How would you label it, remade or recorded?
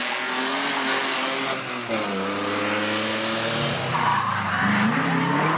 recorded